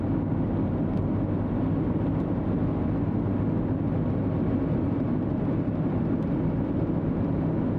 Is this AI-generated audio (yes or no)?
no